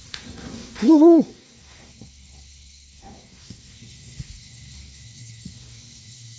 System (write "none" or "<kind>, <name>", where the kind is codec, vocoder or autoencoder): codec, SNAC